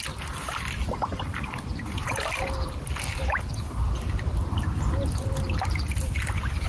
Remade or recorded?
remade